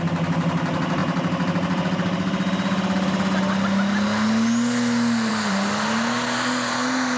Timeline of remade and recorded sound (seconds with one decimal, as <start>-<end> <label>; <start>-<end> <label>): 0.0-7.2 recorded